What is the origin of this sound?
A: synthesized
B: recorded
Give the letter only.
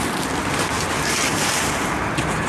B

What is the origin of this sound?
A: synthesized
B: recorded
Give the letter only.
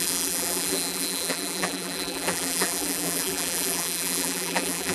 A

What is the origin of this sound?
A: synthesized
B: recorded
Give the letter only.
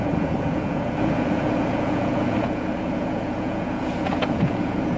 A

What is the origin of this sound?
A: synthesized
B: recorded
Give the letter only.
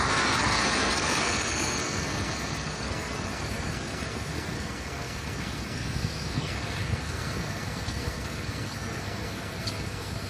A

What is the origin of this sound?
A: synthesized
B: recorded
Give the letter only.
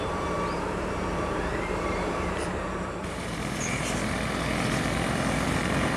A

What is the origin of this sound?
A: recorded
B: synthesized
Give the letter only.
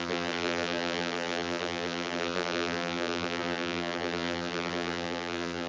B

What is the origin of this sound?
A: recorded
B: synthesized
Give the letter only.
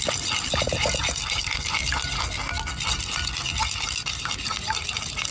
A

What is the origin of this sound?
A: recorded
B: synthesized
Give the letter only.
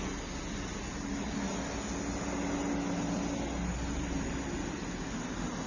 A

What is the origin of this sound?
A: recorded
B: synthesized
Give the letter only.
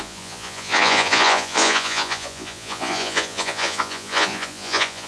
B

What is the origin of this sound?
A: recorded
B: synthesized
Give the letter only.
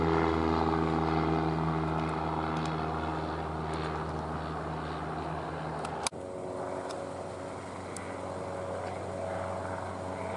A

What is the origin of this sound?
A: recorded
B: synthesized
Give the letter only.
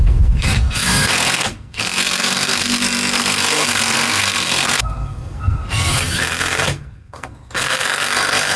B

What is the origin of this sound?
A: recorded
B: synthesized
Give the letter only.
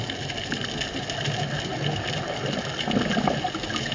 A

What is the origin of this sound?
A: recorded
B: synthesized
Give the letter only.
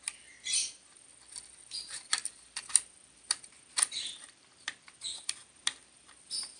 B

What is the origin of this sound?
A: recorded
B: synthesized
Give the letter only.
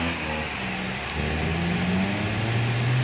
A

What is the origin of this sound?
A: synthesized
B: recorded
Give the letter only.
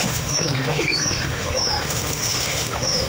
A